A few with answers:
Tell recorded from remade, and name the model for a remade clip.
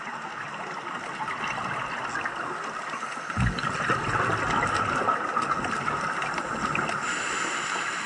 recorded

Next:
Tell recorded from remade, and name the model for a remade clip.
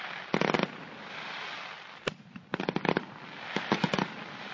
recorded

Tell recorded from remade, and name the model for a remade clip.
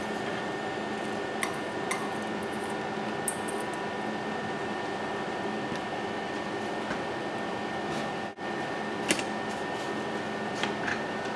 recorded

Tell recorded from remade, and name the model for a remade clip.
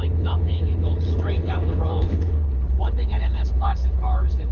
remade, codec, HILCodec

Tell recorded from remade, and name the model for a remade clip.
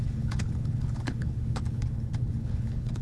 remade, codec, HILCodec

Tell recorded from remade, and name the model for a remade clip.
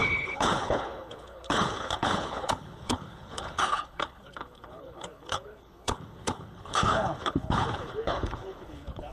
remade, codec, HILCodec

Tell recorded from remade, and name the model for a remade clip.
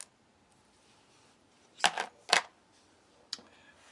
recorded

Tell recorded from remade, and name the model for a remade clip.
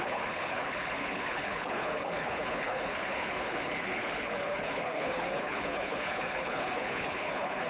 remade, codec, HILCodec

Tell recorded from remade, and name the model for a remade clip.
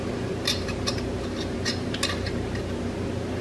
recorded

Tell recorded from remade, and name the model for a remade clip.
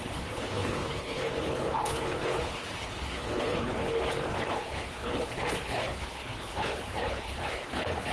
remade, codec, HILCodec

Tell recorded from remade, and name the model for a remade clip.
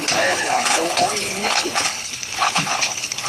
remade, codec, HILCodec